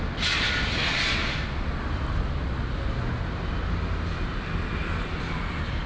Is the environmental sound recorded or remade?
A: recorded